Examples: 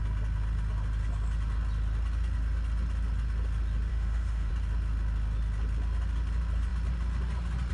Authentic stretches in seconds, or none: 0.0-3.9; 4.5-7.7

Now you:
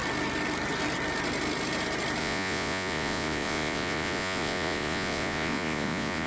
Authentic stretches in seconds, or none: 0.0-2.2